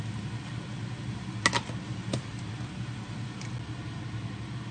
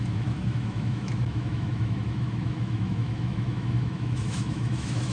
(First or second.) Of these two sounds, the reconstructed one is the second